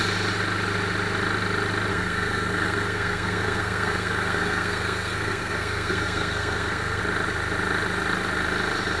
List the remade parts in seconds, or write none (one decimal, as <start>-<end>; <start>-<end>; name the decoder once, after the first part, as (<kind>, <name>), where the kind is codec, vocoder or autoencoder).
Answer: 1.9-7.0 (codec, SNAC)